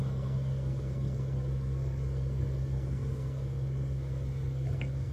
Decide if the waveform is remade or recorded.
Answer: remade